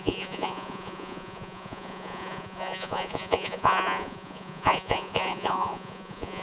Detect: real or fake fake